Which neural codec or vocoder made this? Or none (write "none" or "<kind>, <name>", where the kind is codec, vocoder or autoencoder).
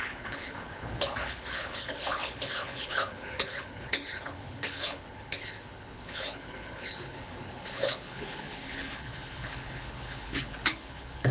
codec, HILCodec